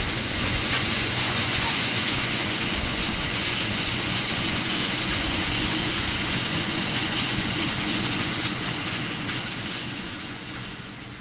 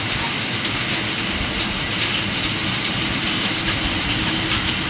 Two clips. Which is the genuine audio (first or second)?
second